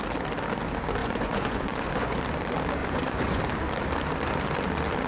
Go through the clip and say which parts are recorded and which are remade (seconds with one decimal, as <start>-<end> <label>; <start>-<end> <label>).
0.0-1.0 recorded; 1.0-2.2 remade; 2.2-2.8 recorded; 2.8-3.4 remade; 3.4-5.1 recorded